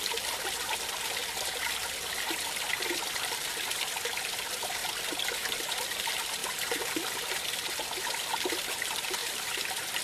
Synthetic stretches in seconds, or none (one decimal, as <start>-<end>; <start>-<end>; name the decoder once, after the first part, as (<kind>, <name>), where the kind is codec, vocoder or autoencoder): 0.0-1.2 (vocoder, BigVGAN v2); 2.7-4.8; 5.7-10.0